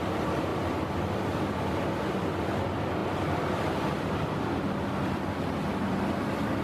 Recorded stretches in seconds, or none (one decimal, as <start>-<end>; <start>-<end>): 0.0-0.5; 1.5-3.0; 6.1-6.6